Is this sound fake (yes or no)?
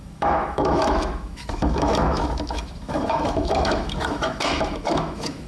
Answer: yes